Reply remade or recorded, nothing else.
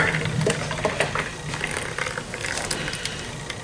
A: recorded